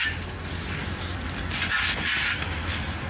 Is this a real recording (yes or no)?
yes